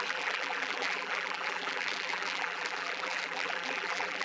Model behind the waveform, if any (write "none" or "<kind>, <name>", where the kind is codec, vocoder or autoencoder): vocoder, BigVGAN v2